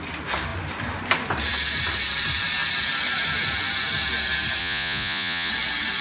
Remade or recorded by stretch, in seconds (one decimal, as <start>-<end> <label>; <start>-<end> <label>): 0.0-4.6 recorded; 4.6-5.5 remade; 5.5-6.0 recorded